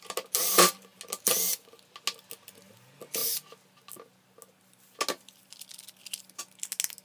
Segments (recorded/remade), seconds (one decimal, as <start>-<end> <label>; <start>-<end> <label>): 0.0-7.0 recorded

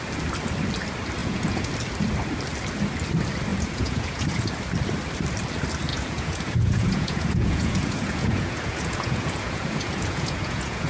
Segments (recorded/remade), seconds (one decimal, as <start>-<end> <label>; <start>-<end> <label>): 0.0-1.2 recorded; 1.2-1.7 remade; 1.7-3.5 recorded; 3.5-4.5 remade; 4.5-5.9 recorded; 5.9-10.9 remade

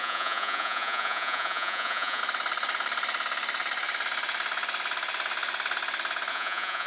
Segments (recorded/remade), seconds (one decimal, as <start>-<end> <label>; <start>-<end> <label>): 0.0-2.2 remade; 2.2-6.3 recorded; 6.3-6.9 remade

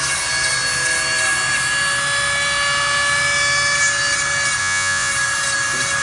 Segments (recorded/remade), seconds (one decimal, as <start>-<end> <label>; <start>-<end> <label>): 0.0-4.6 recorded; 4.6-5.1 remade; 5.1-6.0 recorded

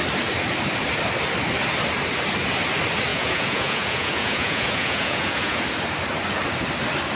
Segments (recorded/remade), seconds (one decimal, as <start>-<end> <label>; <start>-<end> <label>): 0.0-3.1 recorded; 3.1-5.6 remade; 5.6-7.2 recorded